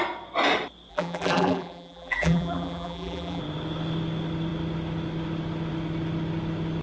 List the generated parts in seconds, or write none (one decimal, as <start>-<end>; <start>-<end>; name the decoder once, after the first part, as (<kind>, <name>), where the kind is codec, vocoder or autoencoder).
0.9-3.4 (vocoder, BigVGAN v2)